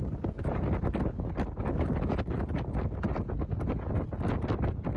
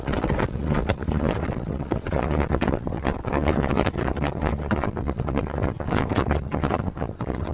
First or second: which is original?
first